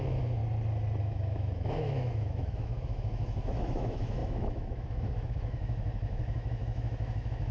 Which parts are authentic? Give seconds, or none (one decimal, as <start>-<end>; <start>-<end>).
0.4-1.0